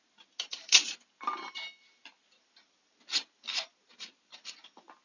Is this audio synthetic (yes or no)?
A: no